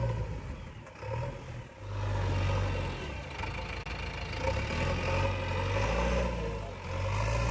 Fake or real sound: real